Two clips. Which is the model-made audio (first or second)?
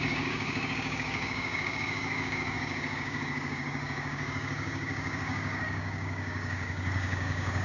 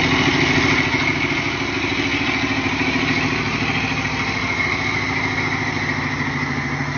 first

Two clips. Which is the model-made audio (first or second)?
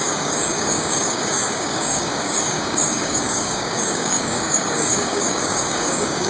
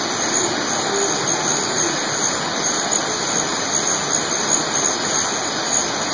first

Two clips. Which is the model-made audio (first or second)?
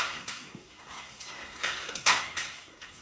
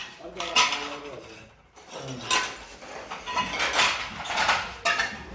first